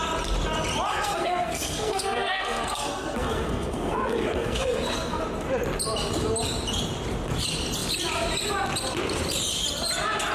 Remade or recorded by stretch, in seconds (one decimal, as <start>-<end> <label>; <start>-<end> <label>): 0.0-0.9 recorded; 0.9-5.2 remade; 5.2-10.3 recorded